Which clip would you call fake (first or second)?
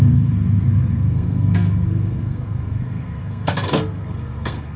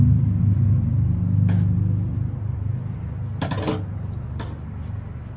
first